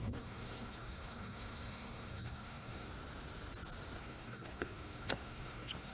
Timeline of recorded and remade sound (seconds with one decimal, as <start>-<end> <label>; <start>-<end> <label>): 0.0-2.9 remade; 2.9-4.0 recorded; 4.0-5.9 remade